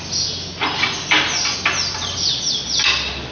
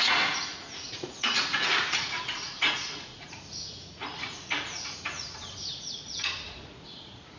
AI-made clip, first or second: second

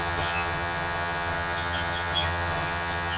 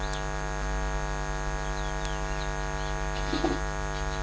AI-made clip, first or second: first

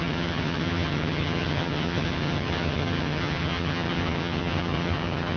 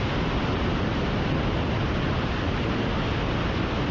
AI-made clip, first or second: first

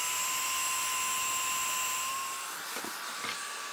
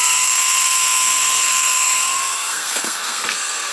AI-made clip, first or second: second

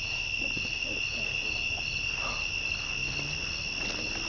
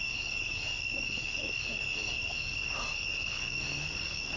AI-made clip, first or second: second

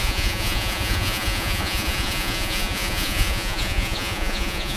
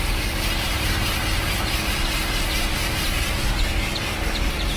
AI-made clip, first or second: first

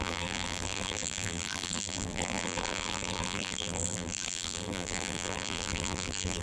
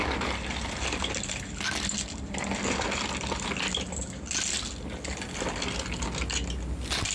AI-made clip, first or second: first